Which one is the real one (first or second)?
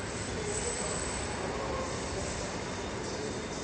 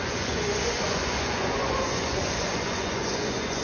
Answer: first